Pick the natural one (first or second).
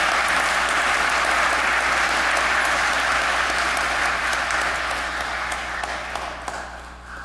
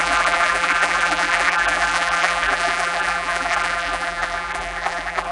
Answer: first